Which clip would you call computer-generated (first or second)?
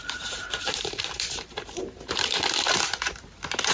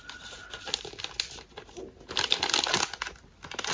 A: first